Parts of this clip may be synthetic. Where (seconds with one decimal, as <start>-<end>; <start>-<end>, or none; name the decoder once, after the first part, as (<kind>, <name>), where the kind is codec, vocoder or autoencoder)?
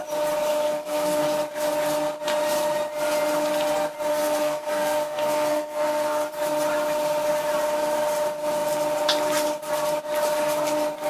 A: 0.5-1.2 (codec, SNAC); 4.1-6.3